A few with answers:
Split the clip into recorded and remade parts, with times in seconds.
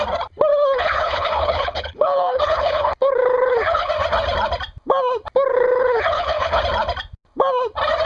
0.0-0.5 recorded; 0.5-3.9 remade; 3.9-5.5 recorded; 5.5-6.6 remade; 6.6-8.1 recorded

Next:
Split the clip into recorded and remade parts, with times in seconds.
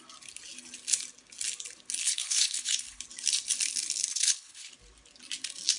0.0-2.0 recorded; 2.0-3.0 remade; 3.0-4.1 recorded; 4.1-4.7 remade; 4.7-5.8 recorded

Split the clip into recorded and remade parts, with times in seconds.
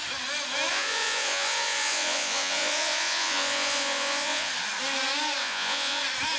0.0-0.7 recorded; 0.7-4.5 remade; 4.5-5.4 recorded; 5.4-6.0 remade; 6.0-6.4 recorded